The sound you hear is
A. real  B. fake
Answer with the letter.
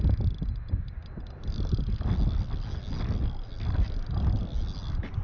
A